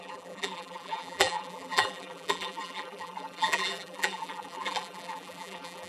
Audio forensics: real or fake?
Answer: fake